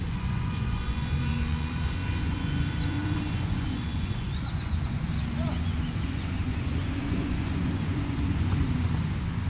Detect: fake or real fake